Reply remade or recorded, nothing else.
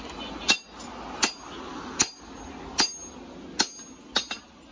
recorded